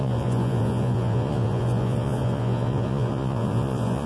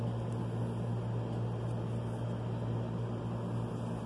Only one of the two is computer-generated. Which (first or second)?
first